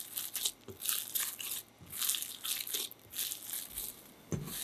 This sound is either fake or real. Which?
real